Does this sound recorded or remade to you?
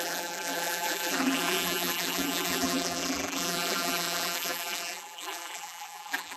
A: remade